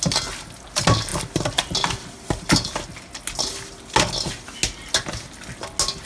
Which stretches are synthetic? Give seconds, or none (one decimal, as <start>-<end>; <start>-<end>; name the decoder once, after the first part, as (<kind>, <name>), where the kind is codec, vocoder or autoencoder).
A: none